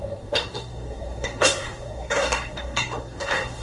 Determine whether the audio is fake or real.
fake